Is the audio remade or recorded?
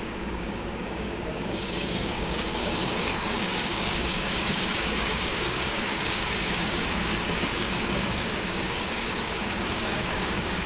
remade